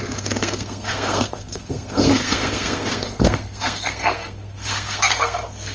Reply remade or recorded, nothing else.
remade